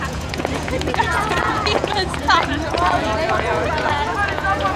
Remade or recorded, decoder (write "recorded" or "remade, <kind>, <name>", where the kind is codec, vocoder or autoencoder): remade, vocoder, Vocos